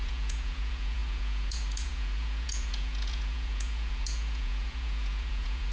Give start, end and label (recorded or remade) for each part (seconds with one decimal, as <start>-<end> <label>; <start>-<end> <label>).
0.0-5.7 remade